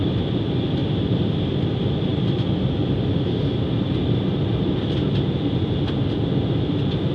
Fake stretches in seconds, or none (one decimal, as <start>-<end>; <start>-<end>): none